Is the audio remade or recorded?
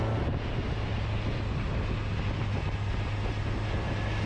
recorded